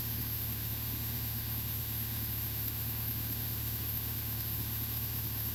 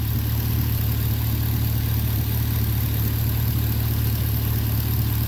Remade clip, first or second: first